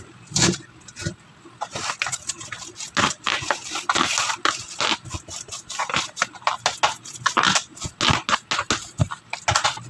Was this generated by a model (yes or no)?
no